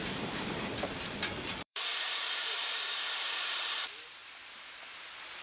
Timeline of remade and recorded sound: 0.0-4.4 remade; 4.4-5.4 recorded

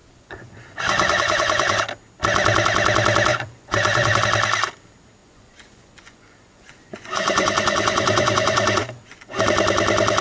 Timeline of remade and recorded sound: 0.0-1.8 remade; 1.8-3.3 recorded; 3.3-4.2 remade; 4.2-5.2 recorded; 5.2-9.4 remade; 9.4-10.2 recorded